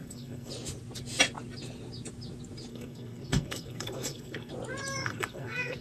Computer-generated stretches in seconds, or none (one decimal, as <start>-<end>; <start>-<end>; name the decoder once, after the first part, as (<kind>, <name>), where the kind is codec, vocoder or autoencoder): 0.0-0.5 (codec, SNAC); 2.7-4.5; 5.0-5.8